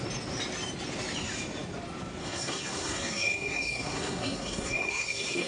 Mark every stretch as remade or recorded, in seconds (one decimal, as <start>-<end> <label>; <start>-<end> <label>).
0.0-2.2 recorded; 2.2-5.5 remade